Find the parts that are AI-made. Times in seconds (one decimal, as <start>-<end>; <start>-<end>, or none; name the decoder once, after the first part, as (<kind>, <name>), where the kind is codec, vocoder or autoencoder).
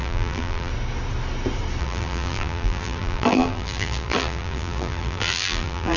0.0-0.7 (vocoder, BigVGAN v2); 1.8-6.0